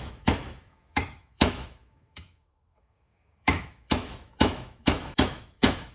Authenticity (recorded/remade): remade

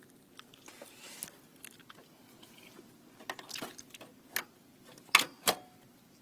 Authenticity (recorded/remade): recorded